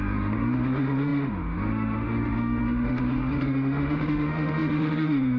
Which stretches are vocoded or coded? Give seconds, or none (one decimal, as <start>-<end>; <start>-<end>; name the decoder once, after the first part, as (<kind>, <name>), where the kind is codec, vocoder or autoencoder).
0.0-5.4 (autoencoder, DAC-VAE)